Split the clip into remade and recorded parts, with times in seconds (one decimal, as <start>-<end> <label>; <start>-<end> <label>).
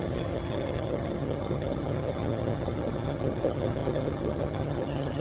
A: 0.0-5.2 remade